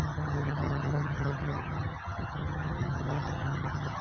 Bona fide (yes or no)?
no